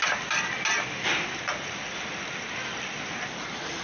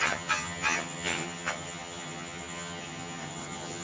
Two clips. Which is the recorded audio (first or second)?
first